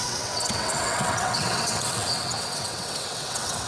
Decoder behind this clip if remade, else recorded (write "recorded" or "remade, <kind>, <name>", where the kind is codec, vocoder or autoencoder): remade, vocoder, WaveNeXt